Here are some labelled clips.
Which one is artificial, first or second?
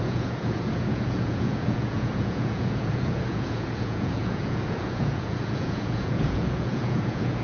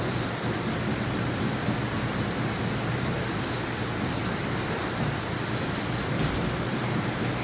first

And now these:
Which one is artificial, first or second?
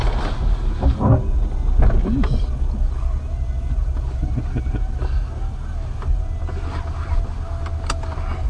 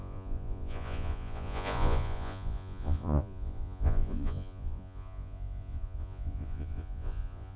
second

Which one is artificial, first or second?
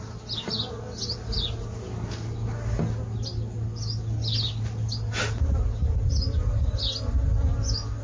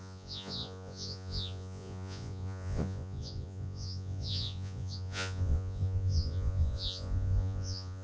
second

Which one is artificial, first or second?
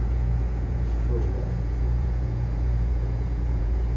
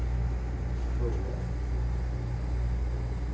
first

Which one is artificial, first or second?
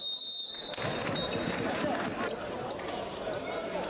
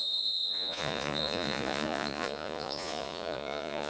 second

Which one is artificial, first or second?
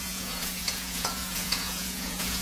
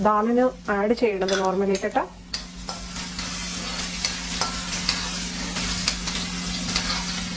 first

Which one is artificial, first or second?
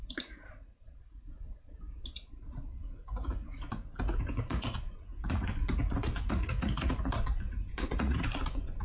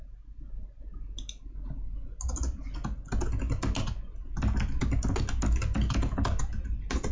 first